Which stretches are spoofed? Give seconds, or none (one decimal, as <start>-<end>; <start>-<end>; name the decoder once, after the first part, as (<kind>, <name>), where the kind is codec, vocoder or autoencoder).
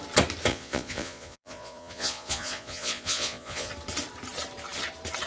0.5-3.7 (vocoder, Vocos)